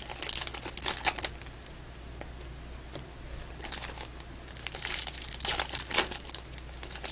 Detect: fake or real real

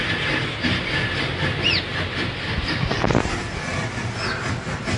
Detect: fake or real real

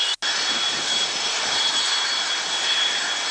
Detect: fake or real real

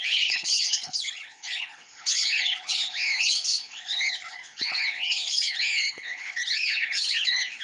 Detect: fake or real fake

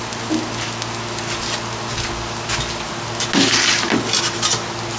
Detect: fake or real real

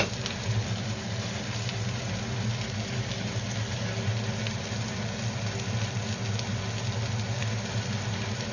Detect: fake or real real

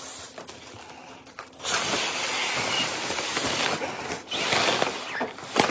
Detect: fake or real real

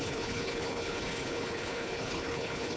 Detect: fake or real fake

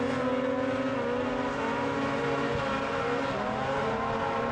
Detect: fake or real real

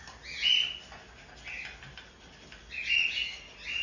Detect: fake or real real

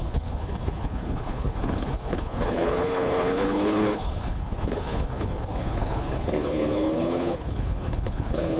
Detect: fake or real fake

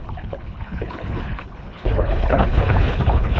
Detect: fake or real fake